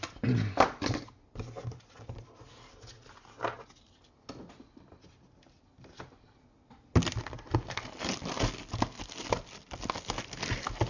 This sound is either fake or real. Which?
real